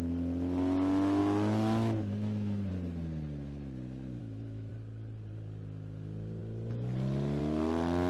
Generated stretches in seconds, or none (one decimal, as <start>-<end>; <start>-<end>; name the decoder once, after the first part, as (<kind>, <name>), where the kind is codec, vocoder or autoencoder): 1.2-2.7 (autoencoder, DAC-VAE); 4.2-4.7